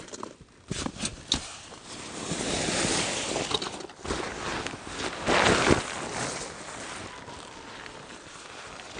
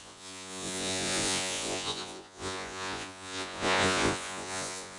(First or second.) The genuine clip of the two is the first